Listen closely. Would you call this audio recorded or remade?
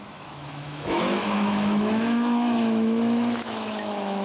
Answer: remade